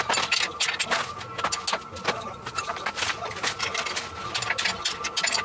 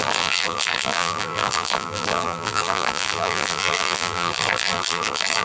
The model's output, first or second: second